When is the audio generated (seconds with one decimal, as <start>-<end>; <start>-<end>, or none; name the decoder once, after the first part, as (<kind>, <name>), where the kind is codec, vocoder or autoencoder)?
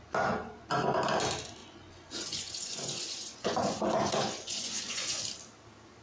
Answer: 1.6-5.2 (vocoder, Vocos)